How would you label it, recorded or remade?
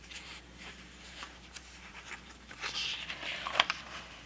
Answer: remade